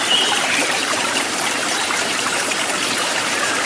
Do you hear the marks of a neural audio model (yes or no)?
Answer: yes